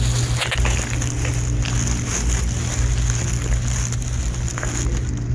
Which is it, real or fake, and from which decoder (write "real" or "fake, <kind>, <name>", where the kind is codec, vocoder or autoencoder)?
real